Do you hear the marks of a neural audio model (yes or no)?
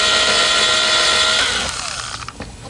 no